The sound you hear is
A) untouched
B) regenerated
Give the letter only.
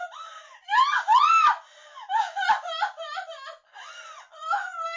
A